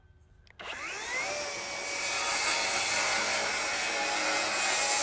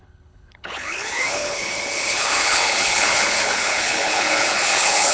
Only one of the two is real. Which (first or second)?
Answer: first